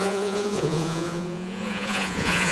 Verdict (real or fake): fake